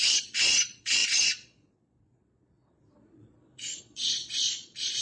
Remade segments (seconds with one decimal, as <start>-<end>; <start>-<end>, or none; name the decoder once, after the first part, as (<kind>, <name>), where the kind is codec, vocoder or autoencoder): 0.0-5.0 (vocoder, Vocos)